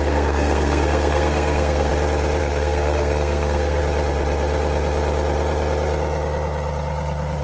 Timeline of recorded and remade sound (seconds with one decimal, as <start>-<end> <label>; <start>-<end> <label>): 0.0-1.9 remade; 1.9-2.4 recorded; 2.4-3.8 remade; 3.8-7.4 recorded